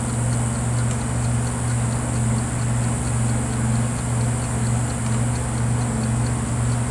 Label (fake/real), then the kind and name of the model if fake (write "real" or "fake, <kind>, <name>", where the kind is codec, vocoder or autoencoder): real